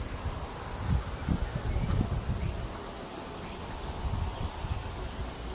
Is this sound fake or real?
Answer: real